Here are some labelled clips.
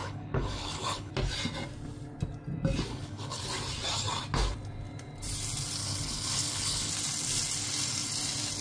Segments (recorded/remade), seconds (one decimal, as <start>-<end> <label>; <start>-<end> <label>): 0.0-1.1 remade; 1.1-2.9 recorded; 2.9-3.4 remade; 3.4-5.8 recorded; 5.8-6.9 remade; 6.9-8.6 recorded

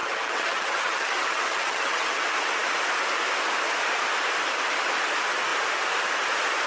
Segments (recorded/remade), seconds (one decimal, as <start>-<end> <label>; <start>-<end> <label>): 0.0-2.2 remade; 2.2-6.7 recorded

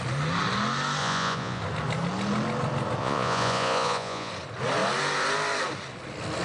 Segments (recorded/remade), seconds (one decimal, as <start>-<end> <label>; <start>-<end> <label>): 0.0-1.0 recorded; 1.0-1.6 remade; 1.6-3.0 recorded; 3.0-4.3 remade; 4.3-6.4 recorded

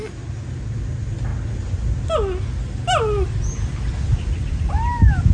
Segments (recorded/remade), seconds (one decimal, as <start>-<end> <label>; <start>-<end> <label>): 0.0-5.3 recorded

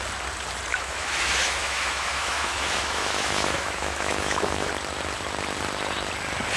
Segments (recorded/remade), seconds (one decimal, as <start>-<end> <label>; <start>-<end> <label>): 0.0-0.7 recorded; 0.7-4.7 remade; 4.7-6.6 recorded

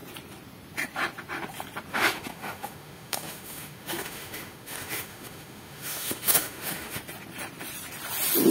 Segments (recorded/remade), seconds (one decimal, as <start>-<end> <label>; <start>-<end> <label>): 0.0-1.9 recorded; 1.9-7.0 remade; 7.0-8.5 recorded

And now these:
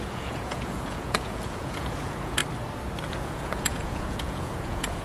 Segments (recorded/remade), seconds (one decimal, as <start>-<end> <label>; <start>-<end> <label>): 0.0-2.4 remade; 2.4-3.1 recorded; 3.1-5.0 remade

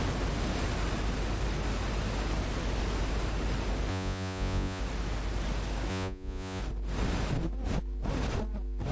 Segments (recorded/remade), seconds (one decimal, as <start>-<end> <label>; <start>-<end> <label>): 0.0-3.9 recorded; 3.9-4.8 remade; 4.8-5.9 recorded; 5.9-6.6 remade; 6.6-8.9 recorded